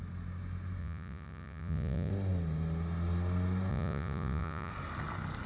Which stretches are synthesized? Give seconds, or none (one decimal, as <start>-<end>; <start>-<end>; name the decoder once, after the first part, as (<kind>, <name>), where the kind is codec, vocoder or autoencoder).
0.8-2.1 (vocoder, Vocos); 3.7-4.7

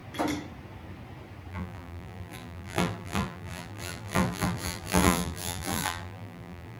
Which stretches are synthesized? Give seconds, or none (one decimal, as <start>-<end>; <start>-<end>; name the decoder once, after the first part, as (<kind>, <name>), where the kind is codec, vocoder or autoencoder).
1.5-6.8 (vocoder, BigVGAN v2)

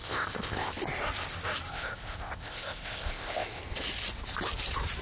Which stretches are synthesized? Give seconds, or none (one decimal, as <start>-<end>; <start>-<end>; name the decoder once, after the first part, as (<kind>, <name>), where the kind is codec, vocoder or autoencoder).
0.0-0.7 (codec, ZipCodec); 1.7-3.6

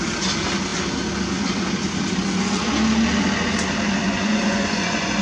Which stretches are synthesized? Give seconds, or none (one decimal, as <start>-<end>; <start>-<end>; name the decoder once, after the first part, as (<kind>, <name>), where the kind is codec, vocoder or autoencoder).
4.0-5.2 (vocoder, Vocos)

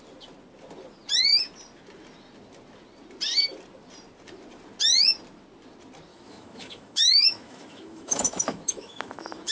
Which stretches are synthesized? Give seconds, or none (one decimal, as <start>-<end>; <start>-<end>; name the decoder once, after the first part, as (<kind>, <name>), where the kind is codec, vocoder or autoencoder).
6.1-9.5 (autoencoder, DAC-VAE)